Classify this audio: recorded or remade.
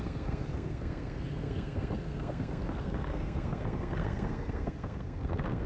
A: remade